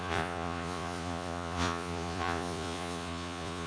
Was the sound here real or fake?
fake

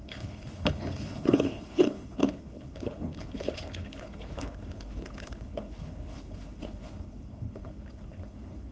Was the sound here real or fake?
fake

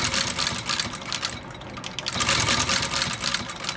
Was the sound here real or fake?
real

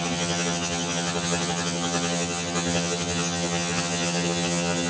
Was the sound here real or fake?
fake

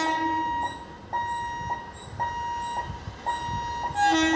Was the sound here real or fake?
real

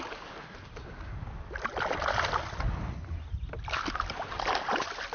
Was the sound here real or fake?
real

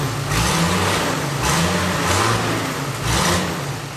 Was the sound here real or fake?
real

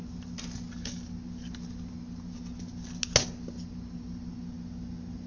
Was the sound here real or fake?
real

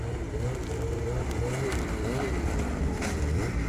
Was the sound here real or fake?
real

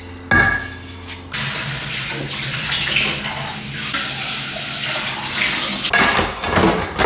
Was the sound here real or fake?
real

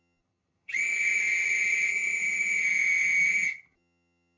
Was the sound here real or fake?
fake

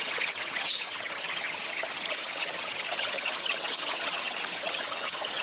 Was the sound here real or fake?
fake